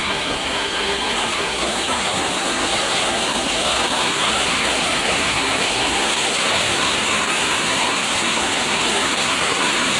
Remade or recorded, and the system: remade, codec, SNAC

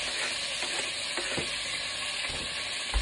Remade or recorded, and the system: recorded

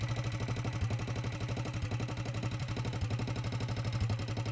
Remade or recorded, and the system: recorded